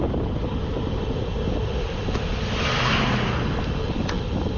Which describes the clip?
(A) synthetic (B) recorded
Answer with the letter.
B